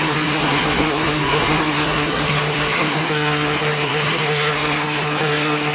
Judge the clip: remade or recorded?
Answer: remade